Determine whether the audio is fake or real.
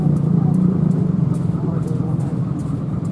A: fake